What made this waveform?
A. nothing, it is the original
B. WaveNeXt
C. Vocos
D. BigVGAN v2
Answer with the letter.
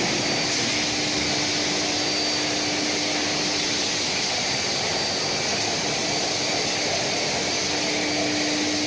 A